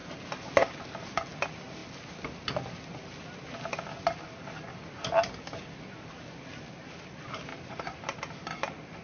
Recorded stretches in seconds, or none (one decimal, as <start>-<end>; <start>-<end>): 0.0-7.5; 8.2-9.0